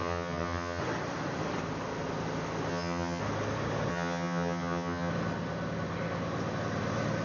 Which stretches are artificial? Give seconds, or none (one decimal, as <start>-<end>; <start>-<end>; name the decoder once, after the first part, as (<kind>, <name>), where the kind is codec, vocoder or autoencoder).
0.0-0.8 (vocoder, HiFi-GAN); 2.7-3.2; 3.9-5.1